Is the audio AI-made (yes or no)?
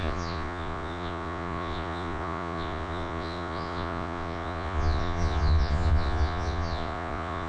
yes